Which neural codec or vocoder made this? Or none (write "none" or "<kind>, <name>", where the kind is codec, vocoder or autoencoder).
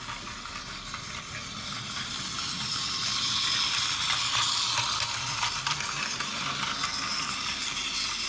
none